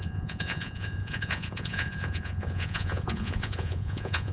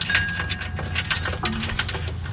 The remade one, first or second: first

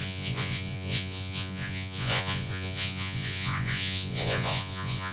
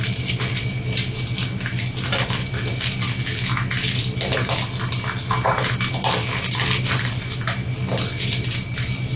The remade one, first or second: first